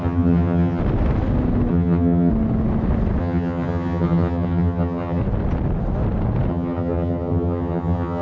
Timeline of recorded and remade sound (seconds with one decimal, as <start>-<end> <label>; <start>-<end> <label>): 0.0-0.8 remade; 0.8-1.7 recorded; 1.7-2.3 remade; 2.3-3.2 recorded; 3.2-5.2 remade; 5.2-6.5 recorded; 6.5-8.2 remade